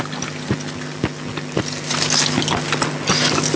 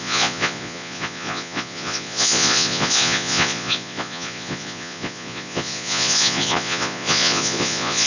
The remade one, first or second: second